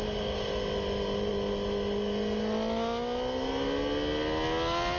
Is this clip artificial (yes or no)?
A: no